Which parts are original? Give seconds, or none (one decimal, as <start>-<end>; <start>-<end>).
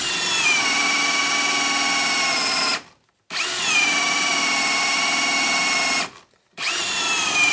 0.0-7.5